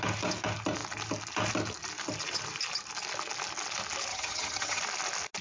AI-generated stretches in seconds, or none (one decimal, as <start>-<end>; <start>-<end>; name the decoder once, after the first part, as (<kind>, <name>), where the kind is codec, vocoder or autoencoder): 4.1-4.8 (vocoder, HiFi-GAN)